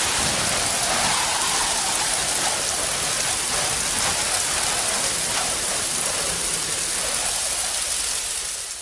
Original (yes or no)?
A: yes